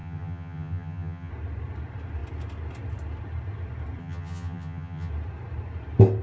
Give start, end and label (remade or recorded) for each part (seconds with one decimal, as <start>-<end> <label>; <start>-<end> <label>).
0.0-1.3 remade; 1.3-4.0 recorded; 4.0-5.1 remade; 5.1-6.2 recorded

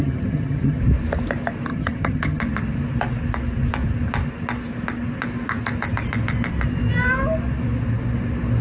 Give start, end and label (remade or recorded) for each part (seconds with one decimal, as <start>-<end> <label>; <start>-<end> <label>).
0.0-0.8 remade; 0.8-1.7 recorded; 1.7-2.4 remade; 2.4-8.6 recorded

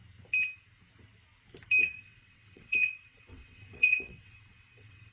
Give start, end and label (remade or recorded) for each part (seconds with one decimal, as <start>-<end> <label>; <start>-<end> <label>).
0.0-1.8 recorded; 1.8-5.1 remade